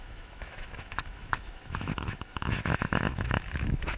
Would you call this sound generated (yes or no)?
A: yes